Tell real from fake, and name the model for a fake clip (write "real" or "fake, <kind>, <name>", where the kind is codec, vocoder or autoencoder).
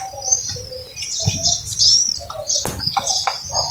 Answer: real